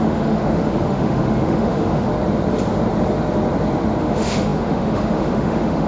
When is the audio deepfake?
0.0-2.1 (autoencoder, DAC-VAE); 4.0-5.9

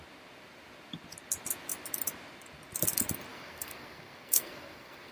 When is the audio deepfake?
3.3-5.1 (codec, SNAC)

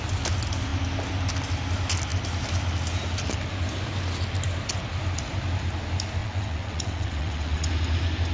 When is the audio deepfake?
6.2-7.7 (vocoder, WaveNeXt)